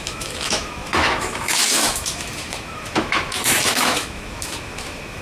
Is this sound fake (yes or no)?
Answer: yes